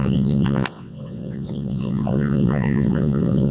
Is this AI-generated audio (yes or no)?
yes